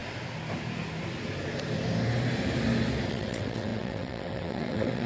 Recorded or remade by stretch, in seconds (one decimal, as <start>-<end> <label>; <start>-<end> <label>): 0.0-3.1 recorded; 3.1-5.1 remade